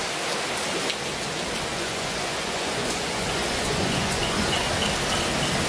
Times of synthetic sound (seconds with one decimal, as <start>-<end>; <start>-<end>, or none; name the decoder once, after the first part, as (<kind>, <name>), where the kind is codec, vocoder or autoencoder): 1.7-4.7 (vocoder, Vocos)